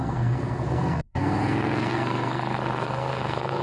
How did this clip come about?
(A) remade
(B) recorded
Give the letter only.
A